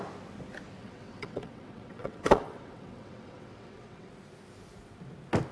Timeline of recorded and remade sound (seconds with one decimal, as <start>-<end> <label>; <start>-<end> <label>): 0.0-0.8 recorded; 0.8-4.1 remade; 4.1-5.5 recorded